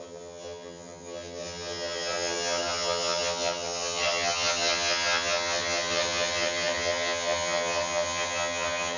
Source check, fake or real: fake